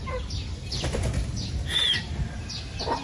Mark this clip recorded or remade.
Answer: recorded